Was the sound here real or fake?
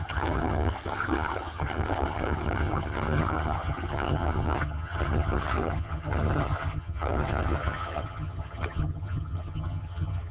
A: fake